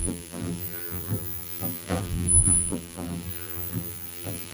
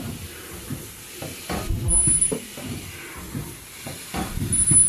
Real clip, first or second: second